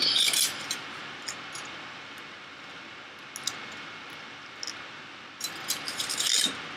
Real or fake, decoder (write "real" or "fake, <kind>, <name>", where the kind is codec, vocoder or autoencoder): real